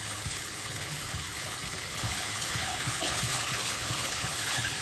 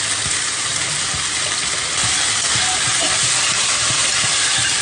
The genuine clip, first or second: second